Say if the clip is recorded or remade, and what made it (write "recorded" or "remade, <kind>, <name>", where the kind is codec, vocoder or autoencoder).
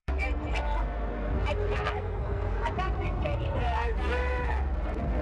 remade, codec, SNAC